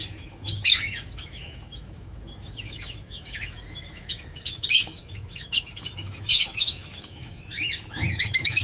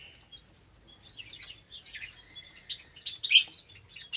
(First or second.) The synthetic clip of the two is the first